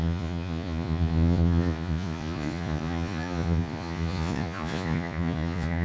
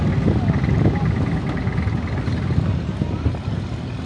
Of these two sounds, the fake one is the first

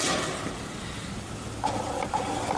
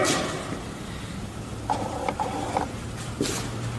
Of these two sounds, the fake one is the second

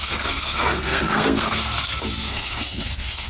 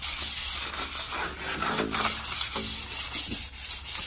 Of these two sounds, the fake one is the first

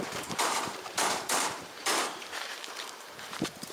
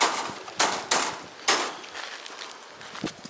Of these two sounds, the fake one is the first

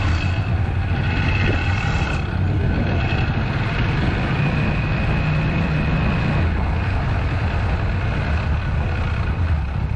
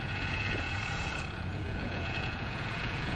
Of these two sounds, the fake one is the second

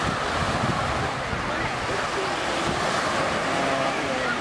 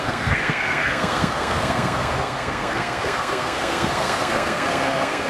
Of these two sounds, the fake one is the second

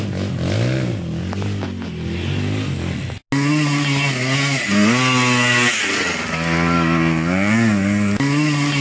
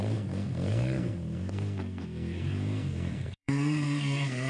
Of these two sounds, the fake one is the second